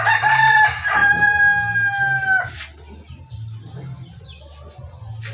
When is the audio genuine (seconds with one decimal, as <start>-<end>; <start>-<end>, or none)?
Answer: 0.0-5.3